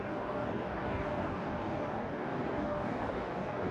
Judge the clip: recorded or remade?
remade